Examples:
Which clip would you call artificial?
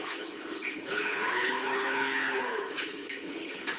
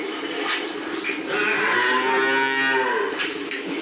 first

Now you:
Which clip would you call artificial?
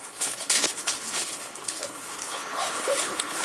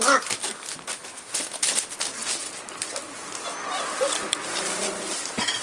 first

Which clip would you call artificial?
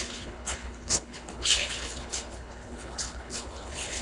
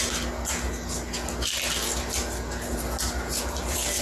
first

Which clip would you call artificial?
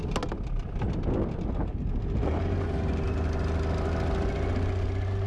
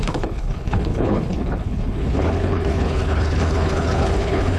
second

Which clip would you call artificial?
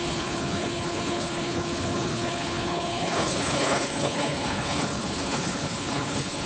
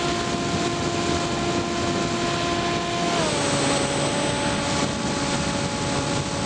first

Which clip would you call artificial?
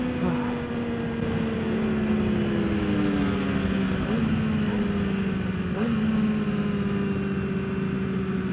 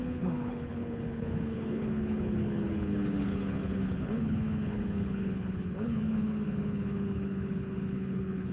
second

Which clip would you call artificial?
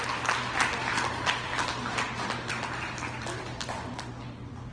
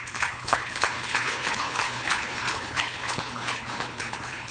second